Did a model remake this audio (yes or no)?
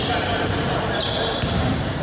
no